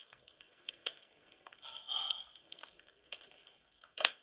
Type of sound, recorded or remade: remade